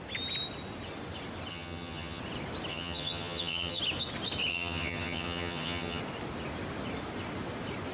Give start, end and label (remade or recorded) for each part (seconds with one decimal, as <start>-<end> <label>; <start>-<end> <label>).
0.0-1.5 recorded; 1.5-2.2 remade; 2.2-2.7 recorded; 2.7-3.8 remade; 3.8-4.5 recorded; 4.5-6.0 remade; 6.0-7.9 recorded